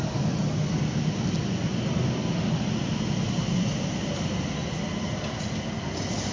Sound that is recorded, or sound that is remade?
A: recorded